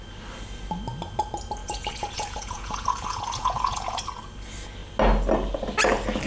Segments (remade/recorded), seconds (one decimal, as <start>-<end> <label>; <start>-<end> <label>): 0.0-1.6 recorded; 1.6-4.0 remade; 4.0-6.3 recorded

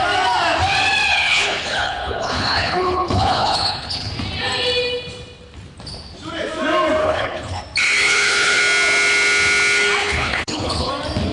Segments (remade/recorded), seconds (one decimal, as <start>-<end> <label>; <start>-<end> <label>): 0.0-1.1 recorded; 1.1-4.1 remade; 4.1-7.0 recorded; 7.0-7.6 remade; 7.6-8.0 recorded; 8.0-8.6 remade; 8.6-10.0 recorded; 10.0-10.9 remade; 10.9-11.3 recorded